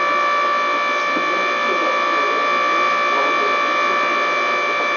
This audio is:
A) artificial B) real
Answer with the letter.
B